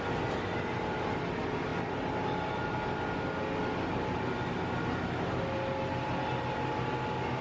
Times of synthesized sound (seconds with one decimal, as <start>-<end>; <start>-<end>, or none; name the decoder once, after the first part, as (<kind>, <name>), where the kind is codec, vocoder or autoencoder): none